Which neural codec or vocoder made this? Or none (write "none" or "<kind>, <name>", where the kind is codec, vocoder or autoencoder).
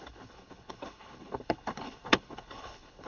codec, HILCodec